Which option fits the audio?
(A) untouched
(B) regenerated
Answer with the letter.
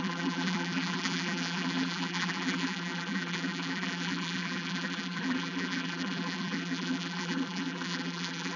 B